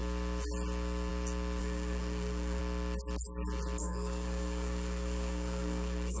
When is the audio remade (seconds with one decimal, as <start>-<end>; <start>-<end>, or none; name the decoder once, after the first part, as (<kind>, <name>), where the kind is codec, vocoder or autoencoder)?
1.6-2.6 (codec, SNAC); 3.8-6.2